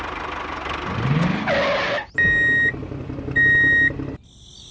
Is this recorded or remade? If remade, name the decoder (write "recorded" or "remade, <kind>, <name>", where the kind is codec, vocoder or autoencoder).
recorded